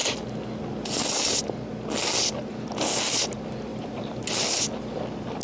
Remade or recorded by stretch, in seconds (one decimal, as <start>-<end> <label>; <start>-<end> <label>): 0.0-3.7 recorded; 3.7-4.2 remade; 4.2-5.4 recorded